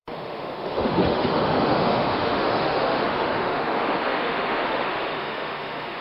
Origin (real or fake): fake